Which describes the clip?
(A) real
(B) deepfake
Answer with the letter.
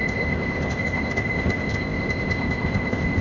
B